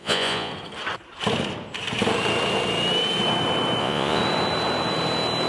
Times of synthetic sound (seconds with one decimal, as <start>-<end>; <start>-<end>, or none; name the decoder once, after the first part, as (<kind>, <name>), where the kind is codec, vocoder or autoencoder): 0.0-0.5 (vocoder, Vocos); 3.8-4.2